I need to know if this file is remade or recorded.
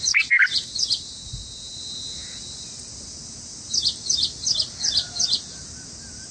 recorded